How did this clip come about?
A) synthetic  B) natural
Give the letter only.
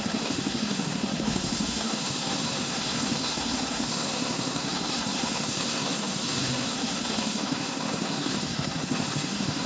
A